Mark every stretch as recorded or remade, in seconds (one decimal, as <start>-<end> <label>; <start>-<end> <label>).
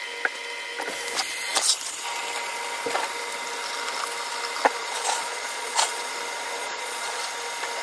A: 0.0-4.8 recorded; 4.8-6.1 remade; 6.1-6.6 recorded; 6.6-7.2 remade; 7.2-7.8 recorded